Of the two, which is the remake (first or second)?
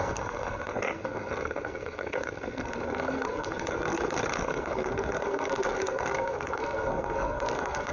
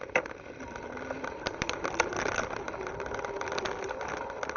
first